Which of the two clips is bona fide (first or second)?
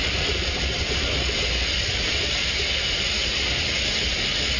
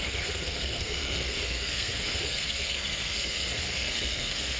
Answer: first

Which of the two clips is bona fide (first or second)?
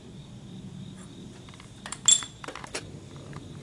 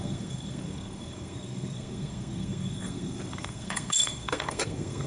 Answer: first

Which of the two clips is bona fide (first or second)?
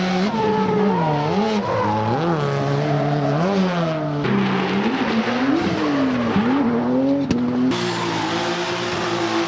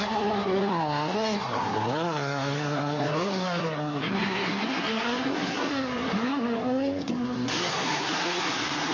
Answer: first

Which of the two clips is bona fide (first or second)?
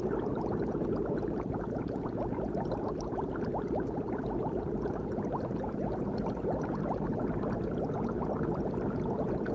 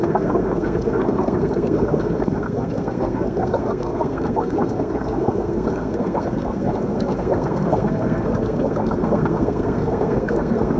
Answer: first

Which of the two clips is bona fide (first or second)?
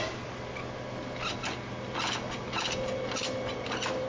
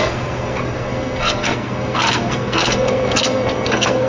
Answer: first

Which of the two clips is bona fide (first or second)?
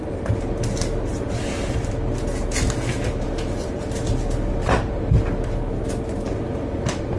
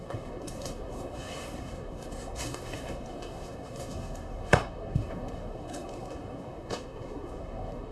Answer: first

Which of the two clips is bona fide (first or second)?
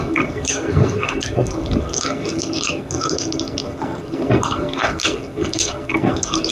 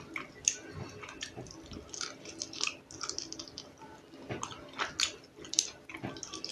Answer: second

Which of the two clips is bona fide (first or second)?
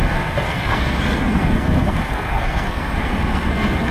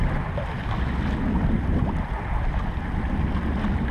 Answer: second